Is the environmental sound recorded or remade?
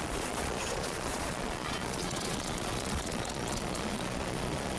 remade